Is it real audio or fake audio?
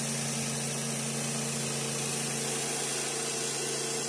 real